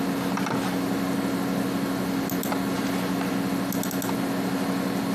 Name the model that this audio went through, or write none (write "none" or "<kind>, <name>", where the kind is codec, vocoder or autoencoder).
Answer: none